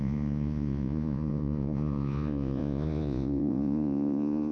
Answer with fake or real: fake